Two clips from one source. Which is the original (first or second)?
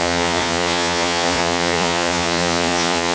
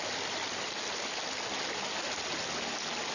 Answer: second